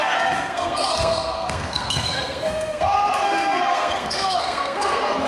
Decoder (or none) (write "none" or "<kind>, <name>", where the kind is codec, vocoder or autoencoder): codec, SNAC